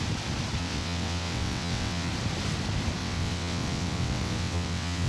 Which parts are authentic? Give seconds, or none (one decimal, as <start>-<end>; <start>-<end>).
0.0-0.6; 2.1-3.0